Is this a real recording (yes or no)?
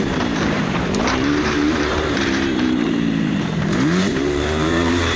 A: no